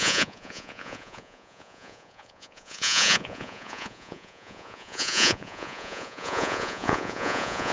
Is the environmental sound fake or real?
fake